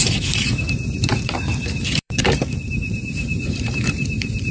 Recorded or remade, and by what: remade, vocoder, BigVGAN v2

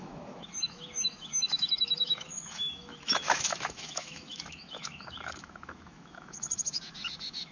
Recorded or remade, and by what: remade, autoencoder, DAC-VAE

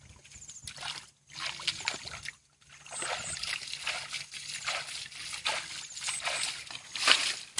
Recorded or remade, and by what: recorded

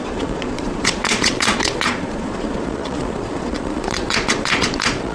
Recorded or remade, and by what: remade, vocoder, Vocos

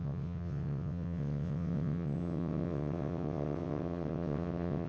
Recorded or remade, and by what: remade, vocoder, WaveNeXt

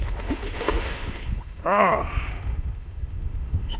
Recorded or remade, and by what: remade, autoencoder, DAC-VAE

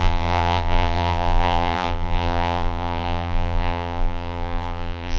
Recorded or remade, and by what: remade, vocoder, BigVGAN v2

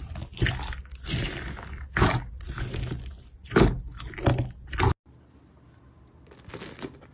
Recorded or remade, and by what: recorded